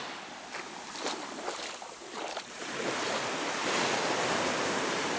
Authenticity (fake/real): real